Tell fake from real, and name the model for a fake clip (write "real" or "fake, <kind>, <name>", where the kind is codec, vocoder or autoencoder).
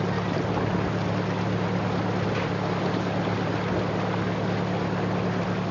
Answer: real